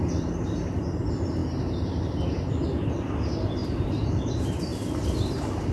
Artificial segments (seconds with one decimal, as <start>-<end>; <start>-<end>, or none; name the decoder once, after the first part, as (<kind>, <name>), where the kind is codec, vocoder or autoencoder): 3.6-4.1 (vocoder, BigVGAN v2)